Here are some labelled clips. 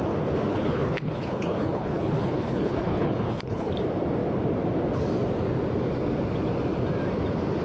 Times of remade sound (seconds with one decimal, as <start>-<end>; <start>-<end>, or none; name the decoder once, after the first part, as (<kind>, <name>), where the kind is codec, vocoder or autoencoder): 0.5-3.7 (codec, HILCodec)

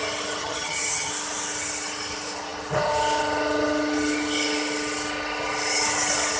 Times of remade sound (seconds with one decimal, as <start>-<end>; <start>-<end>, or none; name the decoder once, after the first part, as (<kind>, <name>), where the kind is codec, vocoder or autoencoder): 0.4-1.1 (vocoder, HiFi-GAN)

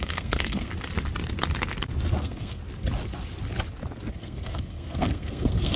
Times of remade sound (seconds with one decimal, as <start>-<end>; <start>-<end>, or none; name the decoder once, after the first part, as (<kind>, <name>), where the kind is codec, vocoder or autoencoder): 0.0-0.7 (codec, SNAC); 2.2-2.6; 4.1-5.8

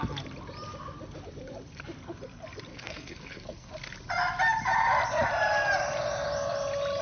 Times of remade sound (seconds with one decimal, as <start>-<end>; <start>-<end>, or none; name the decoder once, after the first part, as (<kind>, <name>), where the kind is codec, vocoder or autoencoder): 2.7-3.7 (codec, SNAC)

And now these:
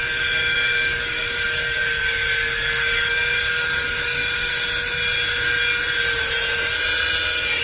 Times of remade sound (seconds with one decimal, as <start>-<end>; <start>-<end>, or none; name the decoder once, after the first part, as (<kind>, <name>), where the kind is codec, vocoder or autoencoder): 0.0-4.5 (codec, DAC)